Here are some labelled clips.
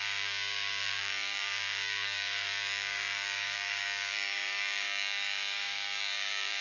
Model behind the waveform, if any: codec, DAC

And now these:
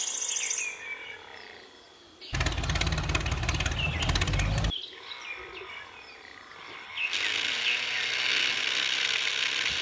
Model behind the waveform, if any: none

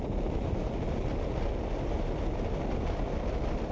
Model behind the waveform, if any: none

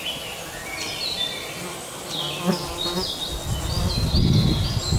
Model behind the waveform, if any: none